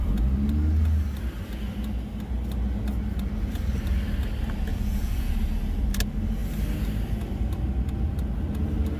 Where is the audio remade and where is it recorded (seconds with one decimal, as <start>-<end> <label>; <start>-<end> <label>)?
0.0-4.7 recorded; 4.7-5.3 remade; 5.3-9.0 recorded